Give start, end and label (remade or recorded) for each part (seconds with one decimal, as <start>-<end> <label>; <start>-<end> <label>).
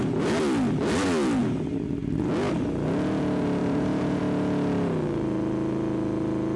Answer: 0.0-3.6 recorded; 3.6-4.2 remade; 4.2-6.6 recorded